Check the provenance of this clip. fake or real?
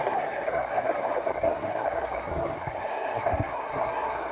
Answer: fake